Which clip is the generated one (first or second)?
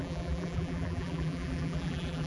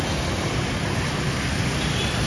first